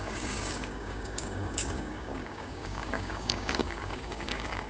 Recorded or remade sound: remade